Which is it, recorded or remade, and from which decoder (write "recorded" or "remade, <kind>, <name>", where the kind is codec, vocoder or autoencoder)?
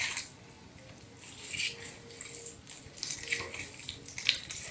recorded